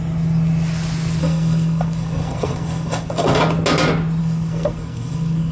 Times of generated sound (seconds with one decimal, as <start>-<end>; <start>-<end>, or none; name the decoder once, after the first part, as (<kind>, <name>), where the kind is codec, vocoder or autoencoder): 1.2-3.4 (codec, SNAC); 4.2-5.5